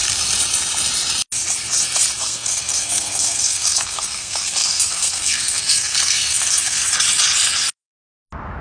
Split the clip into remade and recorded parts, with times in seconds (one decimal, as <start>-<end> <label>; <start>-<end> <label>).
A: 0.0-2.2 recorded; 2.2-6.9 remade; 6.9-8.6 recorded